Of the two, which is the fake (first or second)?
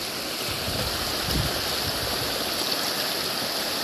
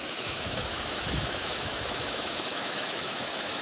second